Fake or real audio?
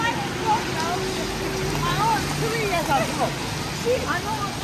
real